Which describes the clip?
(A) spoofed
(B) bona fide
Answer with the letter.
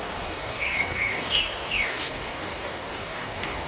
A